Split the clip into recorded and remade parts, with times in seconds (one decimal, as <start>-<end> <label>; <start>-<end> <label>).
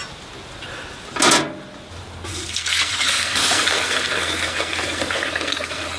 0.0-2.3 recorded; 2.3-6.0 remade